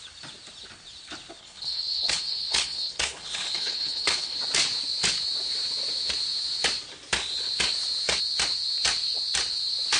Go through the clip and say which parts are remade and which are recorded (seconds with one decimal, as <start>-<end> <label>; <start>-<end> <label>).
0.0-1.4 recorded; 1.4-4.4 remade; 4.4-10.0 recorded